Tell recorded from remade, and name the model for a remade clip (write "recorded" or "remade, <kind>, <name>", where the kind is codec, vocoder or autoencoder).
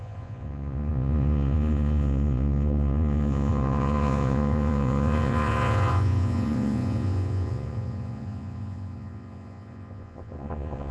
remade, vocoder, Vocos